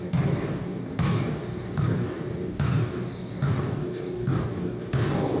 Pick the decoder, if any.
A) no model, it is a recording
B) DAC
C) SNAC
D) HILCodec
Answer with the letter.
B